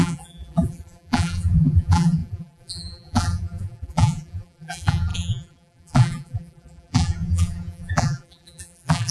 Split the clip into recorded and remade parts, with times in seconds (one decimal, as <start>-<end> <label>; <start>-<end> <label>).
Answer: 0.0-9.1 remade